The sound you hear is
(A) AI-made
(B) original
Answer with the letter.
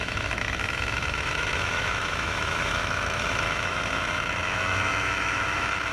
A